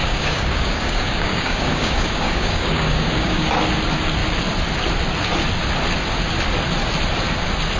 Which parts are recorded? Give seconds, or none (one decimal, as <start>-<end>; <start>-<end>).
3.5-7.8